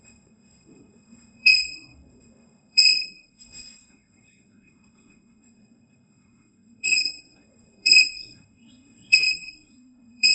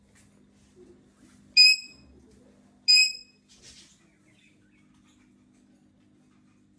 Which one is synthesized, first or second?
first